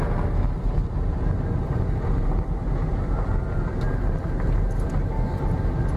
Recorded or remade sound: recorded